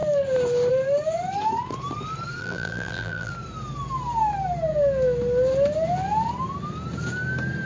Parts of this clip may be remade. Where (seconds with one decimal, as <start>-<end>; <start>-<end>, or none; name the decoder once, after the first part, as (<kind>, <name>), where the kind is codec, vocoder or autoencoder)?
2.4-3.3 (vocoder, BigVGAN v2)